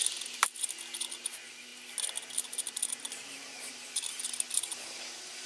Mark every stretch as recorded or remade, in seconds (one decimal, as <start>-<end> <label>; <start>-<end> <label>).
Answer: 0.0-5.5 recorded